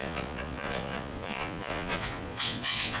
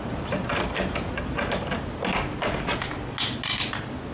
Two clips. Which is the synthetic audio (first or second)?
first